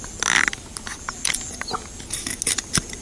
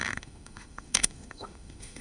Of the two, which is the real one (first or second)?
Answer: first